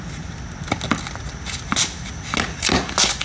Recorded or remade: recorded